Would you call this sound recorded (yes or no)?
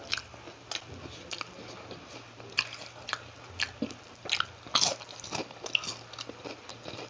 yes